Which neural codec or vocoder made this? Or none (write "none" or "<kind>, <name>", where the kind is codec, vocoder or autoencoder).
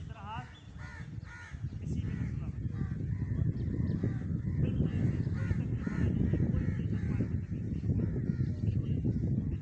none